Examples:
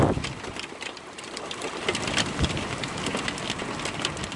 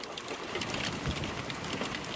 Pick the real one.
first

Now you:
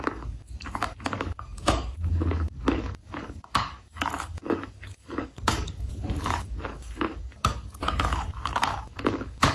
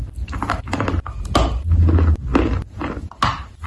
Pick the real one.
second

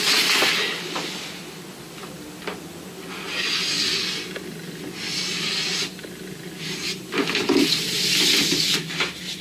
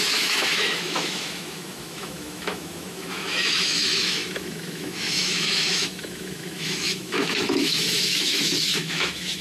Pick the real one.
first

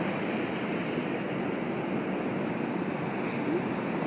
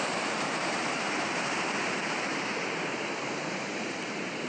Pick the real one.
first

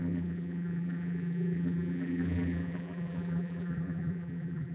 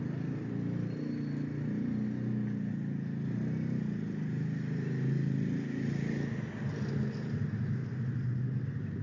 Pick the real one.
second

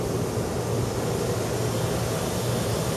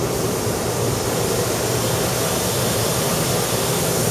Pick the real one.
first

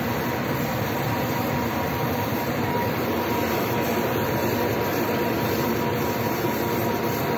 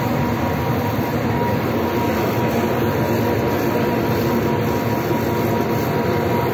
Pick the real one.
second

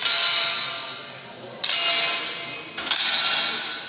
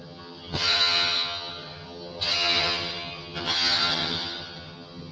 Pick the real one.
first